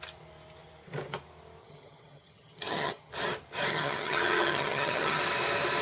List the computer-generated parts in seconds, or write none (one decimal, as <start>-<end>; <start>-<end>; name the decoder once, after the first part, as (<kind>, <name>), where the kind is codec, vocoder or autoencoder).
1.6-3.1 (vocoder, HiFi-GAN); 3.7-5.2